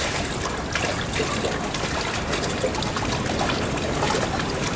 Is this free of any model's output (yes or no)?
yes